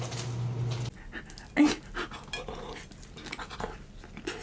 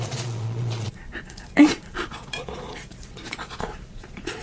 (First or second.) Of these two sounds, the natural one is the first